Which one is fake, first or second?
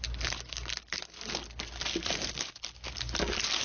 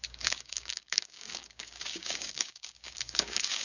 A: second